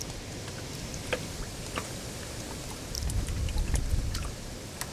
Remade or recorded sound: recorded